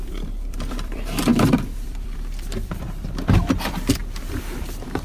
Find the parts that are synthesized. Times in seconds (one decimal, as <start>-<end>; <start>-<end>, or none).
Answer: 0.0-5.0